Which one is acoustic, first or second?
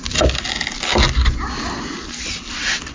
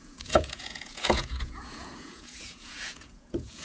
first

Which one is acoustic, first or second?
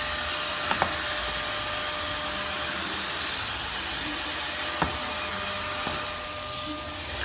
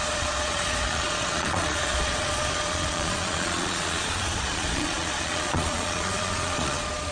first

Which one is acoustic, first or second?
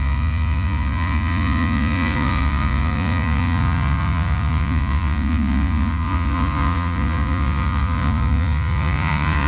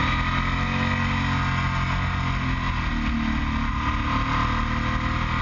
second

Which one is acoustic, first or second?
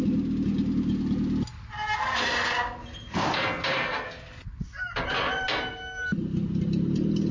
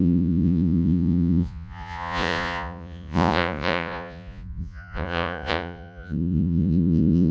first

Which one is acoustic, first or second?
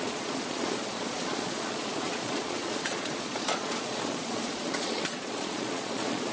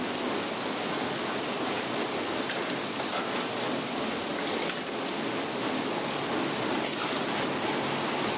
second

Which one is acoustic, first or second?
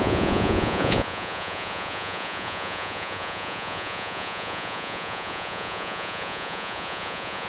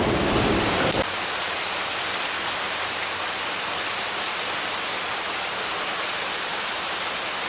second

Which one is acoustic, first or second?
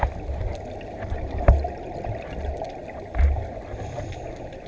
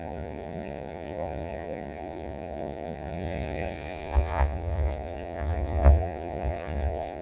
first